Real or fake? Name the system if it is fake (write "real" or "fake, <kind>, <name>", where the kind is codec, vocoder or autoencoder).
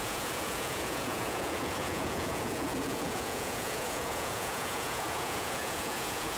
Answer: fake, vocoder, Vocos